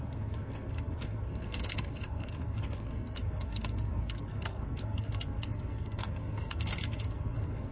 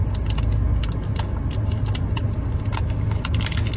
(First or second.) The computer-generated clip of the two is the first